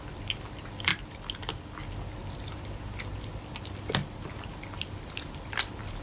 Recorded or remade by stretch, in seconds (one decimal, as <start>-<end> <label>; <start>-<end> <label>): 0.0-6.0 recorded